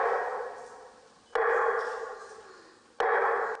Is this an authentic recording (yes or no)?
yes